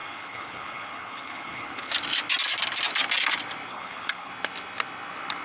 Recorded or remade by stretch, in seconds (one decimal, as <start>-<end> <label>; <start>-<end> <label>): 0.0-1.9 remade; 1.9-3.7 recorded; 3.7-4.3 remade; 4.3-5.4 recorded

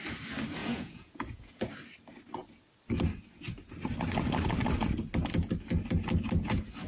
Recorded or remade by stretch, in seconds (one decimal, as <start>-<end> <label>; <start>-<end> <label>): 0.0-0.6 recorded; 0.6-1.7 remade; 1.7-6.9 recorded

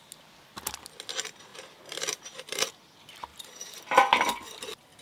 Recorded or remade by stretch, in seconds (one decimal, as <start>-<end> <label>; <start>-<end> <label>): 0.0-1.5 recorded; 1.5-2.7 remade; 2.7-3.3 recorded; 3.3-3.8 remade; 3.8-5.0 recorded

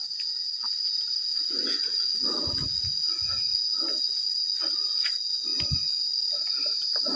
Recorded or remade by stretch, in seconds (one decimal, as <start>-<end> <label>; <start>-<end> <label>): 0.0-1.3 recorded; 1.3-1.8 remade; 1.8-7.2 recorded